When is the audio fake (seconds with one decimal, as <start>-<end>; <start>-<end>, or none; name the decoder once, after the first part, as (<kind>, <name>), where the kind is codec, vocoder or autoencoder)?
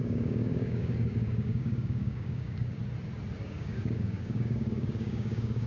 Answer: 0.0-2.8 (codec, DAC); 3.4-5.7